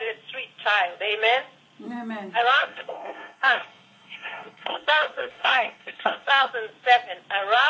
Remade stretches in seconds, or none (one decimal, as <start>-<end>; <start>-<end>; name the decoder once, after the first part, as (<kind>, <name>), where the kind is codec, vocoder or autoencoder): 2.6-6.5 (codec, SNAC)